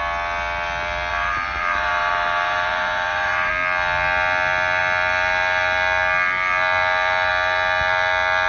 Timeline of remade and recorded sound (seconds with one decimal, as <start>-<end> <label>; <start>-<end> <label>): 0.0-1.1 recorded; 1.1-3.5 remade; 3.5-8.5 recorded